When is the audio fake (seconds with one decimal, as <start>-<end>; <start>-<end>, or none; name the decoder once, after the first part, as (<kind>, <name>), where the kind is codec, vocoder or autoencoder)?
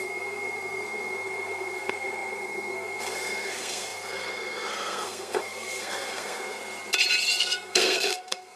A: 0.0-6.6 (codec, SNAC); 7.4-8.6